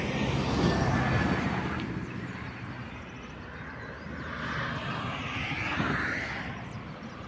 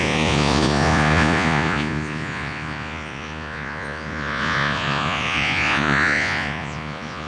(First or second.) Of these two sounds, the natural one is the first